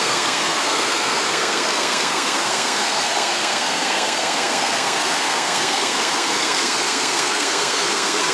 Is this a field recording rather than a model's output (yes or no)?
no